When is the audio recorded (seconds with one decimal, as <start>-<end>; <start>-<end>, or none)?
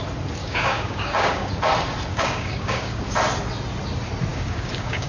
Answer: 0.0-0.4; 1.5-2.1; 3.0-4.3